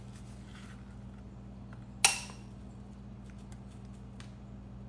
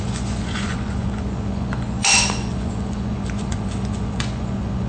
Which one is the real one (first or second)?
first